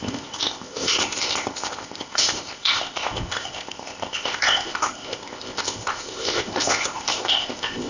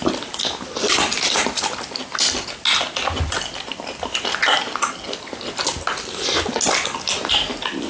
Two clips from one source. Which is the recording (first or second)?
second